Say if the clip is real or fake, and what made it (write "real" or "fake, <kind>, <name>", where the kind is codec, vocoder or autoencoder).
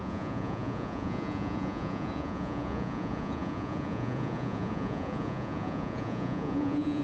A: fake, vocoder, Vocos